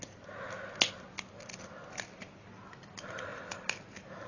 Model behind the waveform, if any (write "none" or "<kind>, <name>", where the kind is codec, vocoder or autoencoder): none